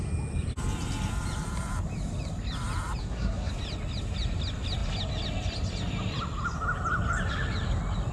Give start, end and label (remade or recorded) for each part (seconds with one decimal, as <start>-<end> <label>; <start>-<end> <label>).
0.0-3.0 recorded; 3.0-3.5 remade; 3.5-8.1 recorded